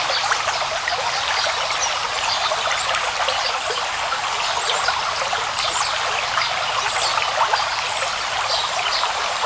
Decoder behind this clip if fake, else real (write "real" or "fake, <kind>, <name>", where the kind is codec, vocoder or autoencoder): real